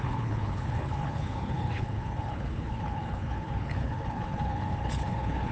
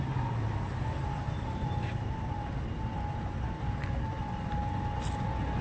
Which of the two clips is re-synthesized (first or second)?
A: first